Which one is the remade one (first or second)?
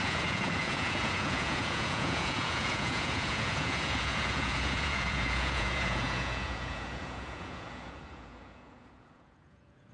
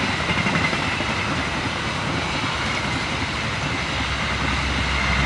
first